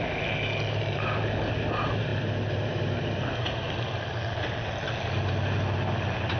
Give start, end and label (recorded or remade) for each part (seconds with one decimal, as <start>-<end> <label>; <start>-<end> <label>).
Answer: 0.0-6.4 recorded